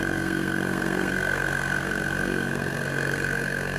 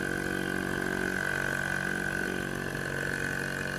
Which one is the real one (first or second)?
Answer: second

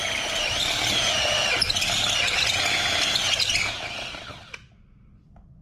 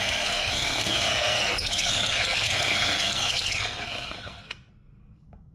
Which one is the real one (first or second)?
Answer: first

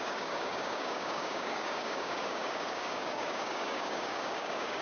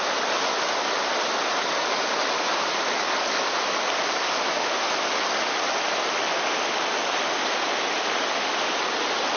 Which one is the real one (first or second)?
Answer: second